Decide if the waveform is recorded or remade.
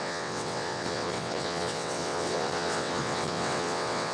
remade